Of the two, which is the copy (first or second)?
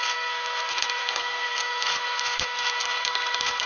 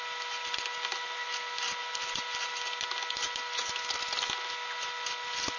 first